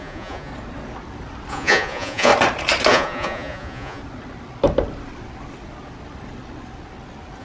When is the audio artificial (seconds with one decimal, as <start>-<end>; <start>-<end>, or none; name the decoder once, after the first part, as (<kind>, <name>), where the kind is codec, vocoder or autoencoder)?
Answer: 0.0-0.5 (vocoder, Vocos); 1.5-2.3; 2.9-4.0